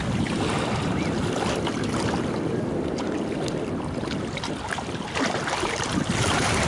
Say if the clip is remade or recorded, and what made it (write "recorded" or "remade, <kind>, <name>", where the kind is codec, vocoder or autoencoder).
recorded